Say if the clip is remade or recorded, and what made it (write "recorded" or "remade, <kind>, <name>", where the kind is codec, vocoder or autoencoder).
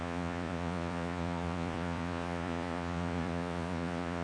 remade, vocoder, Vocos